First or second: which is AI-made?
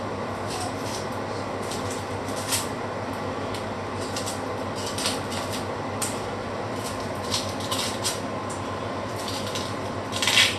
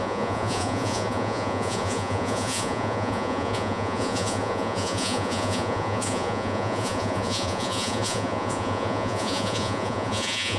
second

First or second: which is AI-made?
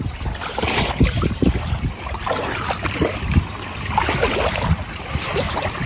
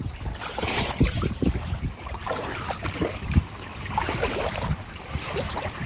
second